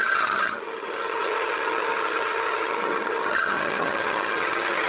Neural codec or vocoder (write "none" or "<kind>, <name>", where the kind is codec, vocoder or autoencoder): vocoder, HiFi-GAN